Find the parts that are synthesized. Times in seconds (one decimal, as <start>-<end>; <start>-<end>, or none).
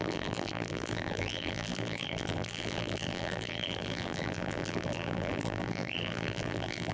0.0-6.9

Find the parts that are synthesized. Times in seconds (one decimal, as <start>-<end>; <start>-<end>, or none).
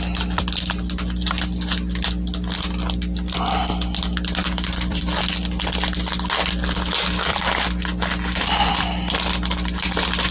4.4-5.2; 7.3-10.3